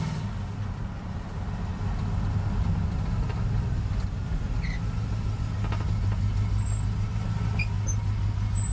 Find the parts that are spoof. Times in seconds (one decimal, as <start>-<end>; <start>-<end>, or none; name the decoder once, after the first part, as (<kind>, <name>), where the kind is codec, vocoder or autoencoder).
none